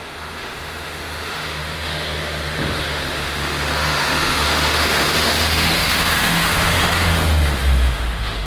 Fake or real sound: fake